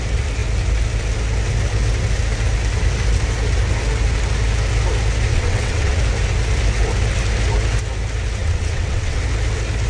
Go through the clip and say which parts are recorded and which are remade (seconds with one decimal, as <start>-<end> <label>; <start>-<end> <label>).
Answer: 0.0-5.3 recorded; 5.3-6.0 remade; 6.0-8.4 recorded; 8.4-9.2 remade; 9.2-9.9 recorded